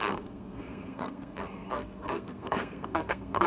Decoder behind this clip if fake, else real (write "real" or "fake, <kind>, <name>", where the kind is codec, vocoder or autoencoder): fake, codec, SNAC